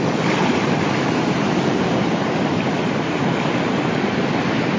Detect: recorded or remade recorded